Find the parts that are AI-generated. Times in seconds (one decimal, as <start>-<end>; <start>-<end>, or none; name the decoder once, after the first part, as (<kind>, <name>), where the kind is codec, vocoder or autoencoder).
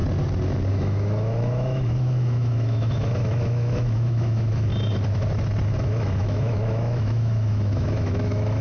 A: 0.7-4.7 (autoencoder, DAC-VAE); 5.7-8.6